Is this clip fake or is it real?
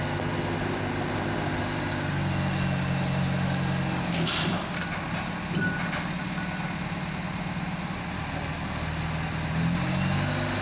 real